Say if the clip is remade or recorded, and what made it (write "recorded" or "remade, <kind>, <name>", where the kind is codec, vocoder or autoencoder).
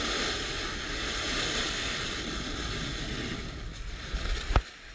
recorded